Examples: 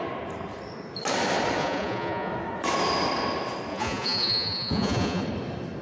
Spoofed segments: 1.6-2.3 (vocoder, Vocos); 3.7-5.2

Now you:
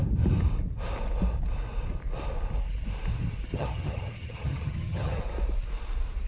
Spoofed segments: 3.5-5.2 (vocoder, HiFi-GAN)